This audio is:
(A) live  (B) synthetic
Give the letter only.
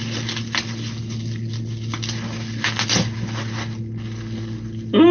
A